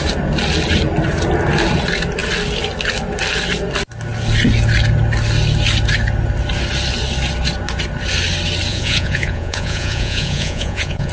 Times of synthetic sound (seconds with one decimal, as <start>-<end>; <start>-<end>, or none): 8.7-11.1